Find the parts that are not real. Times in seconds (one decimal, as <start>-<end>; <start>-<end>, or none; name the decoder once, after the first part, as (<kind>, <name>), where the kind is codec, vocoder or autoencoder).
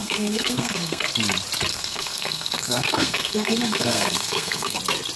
0.0-1.1 (codec, SNAC); 1.7-4.8